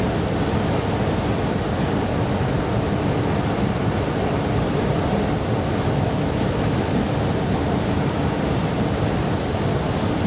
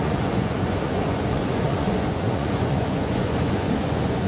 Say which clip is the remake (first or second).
second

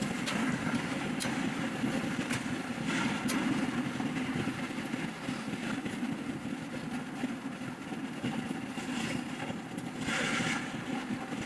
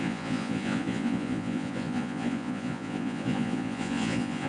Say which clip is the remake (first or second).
second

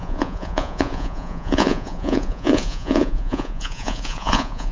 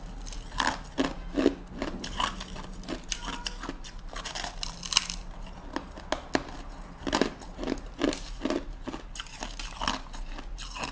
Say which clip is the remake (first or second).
first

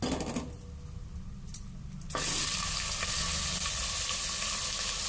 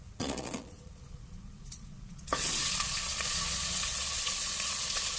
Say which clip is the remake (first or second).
second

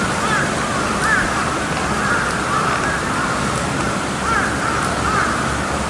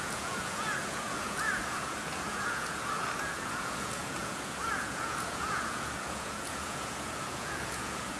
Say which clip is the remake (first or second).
second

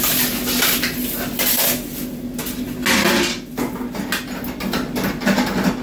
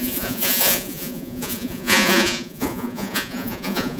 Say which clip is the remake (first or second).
second